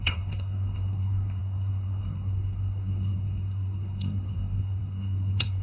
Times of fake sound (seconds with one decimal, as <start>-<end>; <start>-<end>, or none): 0.0-5.6

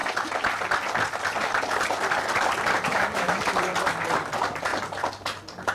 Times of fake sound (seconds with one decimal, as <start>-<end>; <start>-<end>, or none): 2.9-3.4

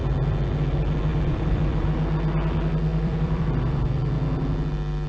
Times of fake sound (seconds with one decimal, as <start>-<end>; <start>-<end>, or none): 1.1-2.0; 2.9-4.0